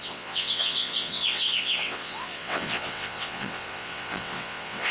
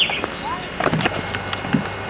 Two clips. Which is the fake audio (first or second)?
first